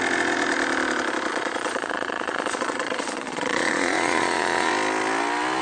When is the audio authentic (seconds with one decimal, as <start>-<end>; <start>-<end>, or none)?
0.0-1.3; 4.7-5.6